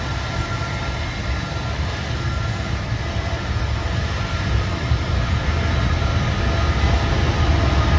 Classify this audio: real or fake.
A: real